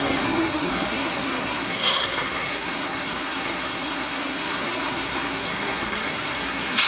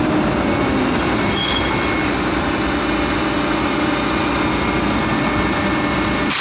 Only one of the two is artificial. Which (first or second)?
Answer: first